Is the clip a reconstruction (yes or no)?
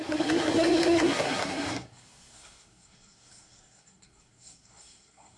yes